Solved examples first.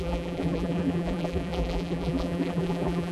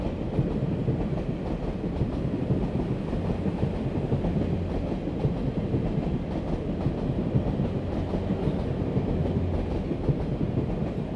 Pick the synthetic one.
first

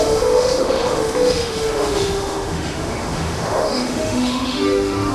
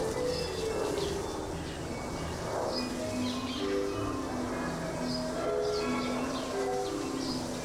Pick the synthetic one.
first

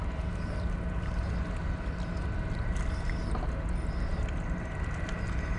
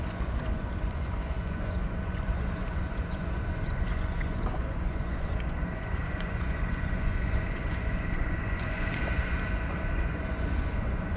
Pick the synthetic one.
second